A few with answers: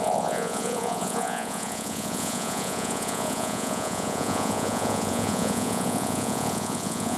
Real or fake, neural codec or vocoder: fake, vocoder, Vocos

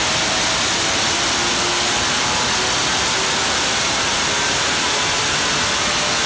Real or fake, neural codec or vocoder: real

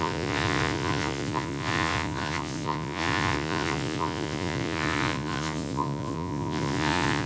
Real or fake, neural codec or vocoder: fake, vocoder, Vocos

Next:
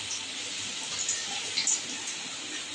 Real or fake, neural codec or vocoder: real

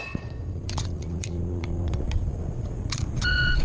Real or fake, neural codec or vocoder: fake, vocoder, Vocos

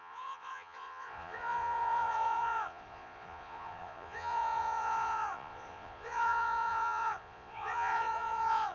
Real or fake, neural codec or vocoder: fake, vocoder, Vocos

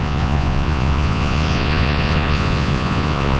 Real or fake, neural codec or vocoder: fake, vocoder, Vocos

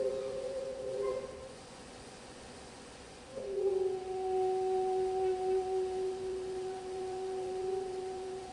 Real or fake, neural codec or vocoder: fake, vocoder, Vocos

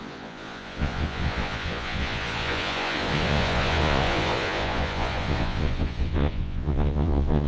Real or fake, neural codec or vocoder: fake, vocoder, Vocos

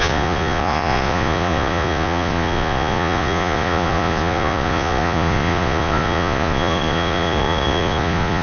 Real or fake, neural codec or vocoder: fake, vocoder, Vocos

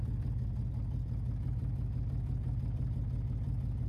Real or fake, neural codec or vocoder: real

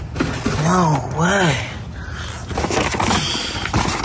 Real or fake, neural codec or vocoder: real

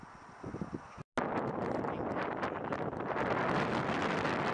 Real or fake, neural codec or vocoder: real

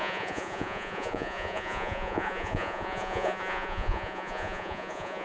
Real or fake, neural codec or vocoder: fake, vocoder, Vocos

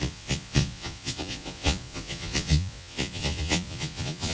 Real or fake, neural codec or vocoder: fake, vocoder, Vocos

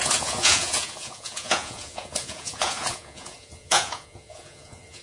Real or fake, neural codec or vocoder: fake, vocoder, Vocos